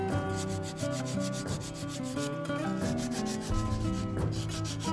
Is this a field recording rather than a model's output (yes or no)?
yes